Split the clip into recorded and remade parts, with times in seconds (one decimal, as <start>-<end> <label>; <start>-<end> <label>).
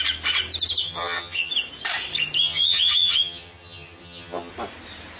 0.0-0.8 recorded; 0.8-1.5 remade; 1.5-2.4 recorded; 2.4-4.5 remade; 4.5-5.2 recorded